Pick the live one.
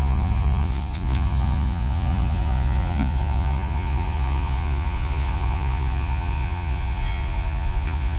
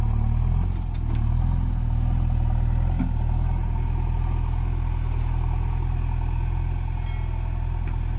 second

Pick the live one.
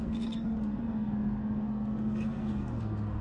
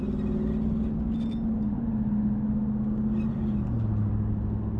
second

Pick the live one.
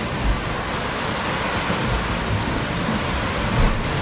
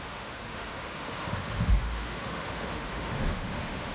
first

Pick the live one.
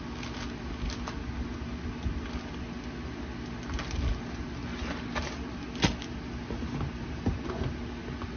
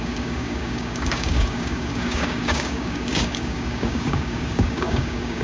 first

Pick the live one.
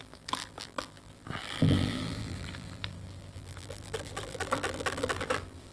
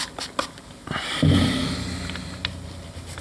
second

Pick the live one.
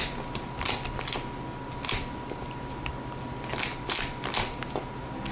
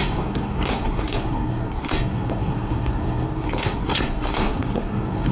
first